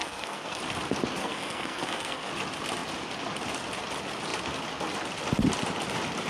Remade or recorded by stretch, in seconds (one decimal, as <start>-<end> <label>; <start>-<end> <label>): 0.0-0.6 remade; 0.6-1.2 recorded; 1.2-2.3 remade; 2.3-6.3 recorded